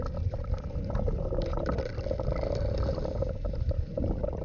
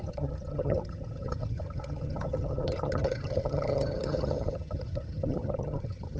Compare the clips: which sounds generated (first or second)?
second